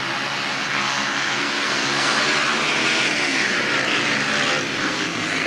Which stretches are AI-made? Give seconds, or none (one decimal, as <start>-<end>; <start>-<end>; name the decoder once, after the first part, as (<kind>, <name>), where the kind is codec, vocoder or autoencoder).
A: 0.5-2.2 (codec, SNAC); 2.8-3.6; 4.7-5.5